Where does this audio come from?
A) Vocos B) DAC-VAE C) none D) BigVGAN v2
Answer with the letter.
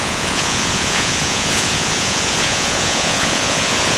A